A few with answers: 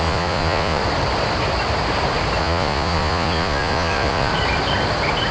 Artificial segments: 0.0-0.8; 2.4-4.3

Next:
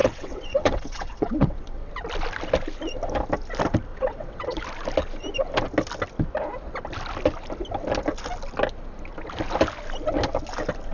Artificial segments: 0.0-1.9; 3.9-4.6

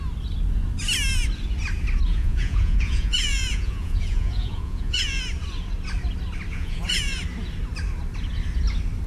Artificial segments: 2.1-5.2; 6.5-7.2

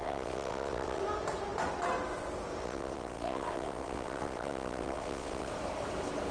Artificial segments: 0.0-1.0; 2.6-5.5

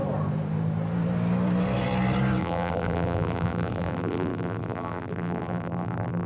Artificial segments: 2.4-6.3

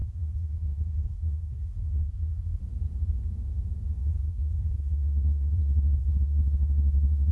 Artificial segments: 0.0-2.6; 4.0-7.3

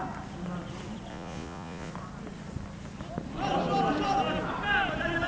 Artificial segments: 1.1-1.9